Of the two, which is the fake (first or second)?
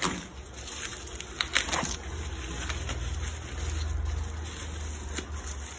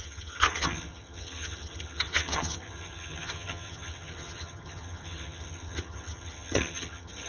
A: second